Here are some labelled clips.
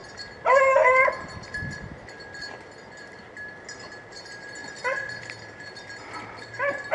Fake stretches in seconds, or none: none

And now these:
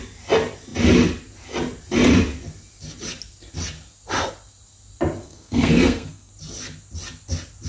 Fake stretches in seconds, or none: 5.2-6.3 (codec, SNAC)

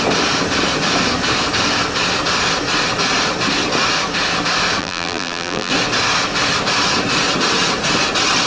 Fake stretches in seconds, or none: 4.8-5.7 (vocoder, BigVGAN v2)

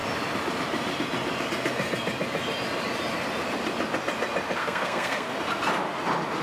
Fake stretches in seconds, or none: 4.6-5.3 (codec, SNAC)

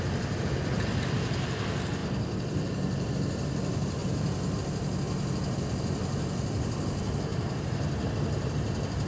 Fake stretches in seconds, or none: 2.0-3.1 (vocoder, BigVGAN v2); 4.0-4.5; 7.3-8.1